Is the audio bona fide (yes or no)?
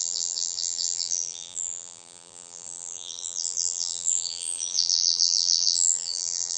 no